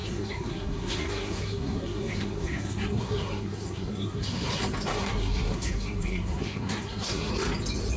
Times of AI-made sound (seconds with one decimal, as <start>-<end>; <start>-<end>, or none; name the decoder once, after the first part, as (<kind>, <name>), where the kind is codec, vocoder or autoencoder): 0.0-4.5 (codec, SNAC); 4.9-7.3